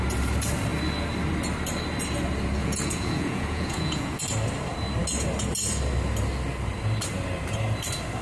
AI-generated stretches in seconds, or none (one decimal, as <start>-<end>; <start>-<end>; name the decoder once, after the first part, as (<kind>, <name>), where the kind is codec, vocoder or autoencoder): 2.6-4.2 (vocoder, Vocos)